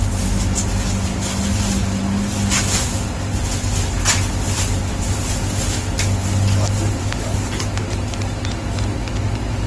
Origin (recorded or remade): recorded